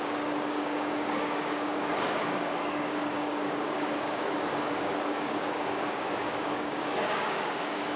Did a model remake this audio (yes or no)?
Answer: yes